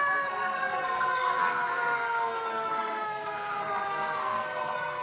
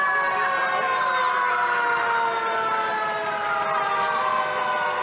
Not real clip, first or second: first